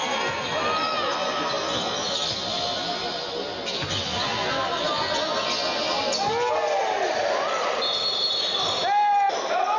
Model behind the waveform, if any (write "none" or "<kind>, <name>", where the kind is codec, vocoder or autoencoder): none